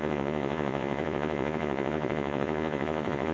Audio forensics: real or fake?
fake